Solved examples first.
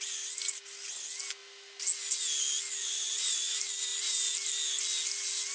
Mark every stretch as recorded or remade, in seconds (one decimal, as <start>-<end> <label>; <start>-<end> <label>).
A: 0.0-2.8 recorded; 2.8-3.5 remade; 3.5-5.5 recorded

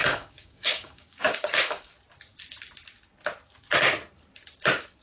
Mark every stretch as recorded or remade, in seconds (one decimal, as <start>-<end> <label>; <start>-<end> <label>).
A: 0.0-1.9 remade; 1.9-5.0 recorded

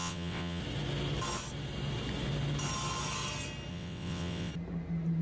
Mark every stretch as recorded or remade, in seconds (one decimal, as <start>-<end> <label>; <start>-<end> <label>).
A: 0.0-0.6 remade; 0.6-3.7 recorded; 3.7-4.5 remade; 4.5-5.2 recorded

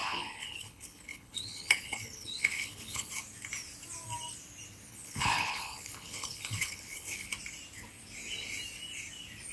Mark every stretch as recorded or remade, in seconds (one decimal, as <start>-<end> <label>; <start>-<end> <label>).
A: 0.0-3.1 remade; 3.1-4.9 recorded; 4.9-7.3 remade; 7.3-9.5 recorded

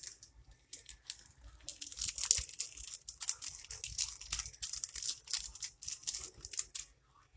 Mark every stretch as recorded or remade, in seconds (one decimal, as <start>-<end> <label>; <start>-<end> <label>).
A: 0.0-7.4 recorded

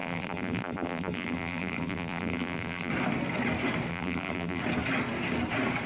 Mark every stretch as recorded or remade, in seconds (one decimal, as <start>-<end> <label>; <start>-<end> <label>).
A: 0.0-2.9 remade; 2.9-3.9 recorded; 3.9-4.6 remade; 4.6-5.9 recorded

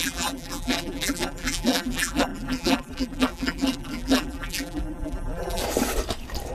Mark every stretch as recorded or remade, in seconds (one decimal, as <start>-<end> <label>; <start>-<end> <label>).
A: 0.0-5.6 remade; 5.6-6.5 recorded

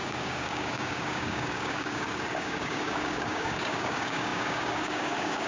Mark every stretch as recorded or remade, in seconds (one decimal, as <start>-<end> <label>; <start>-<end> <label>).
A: 0.0-5.5 remade